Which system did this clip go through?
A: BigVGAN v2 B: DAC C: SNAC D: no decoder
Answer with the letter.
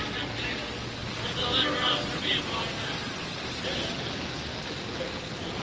D